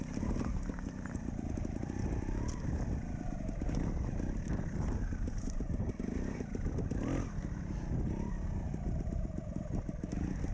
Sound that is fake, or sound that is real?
real